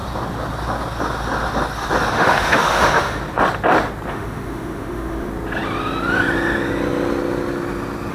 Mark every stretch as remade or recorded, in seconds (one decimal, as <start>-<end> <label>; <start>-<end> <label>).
0.0-2.1 recorded; 2.1-3.2 remade; 3.2-4.1 recorded; 4.1-5.3 remade; 5.3-8.1 recorded